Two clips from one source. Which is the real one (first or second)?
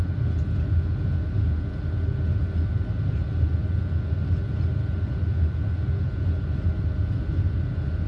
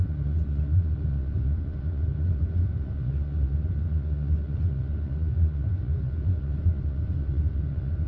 first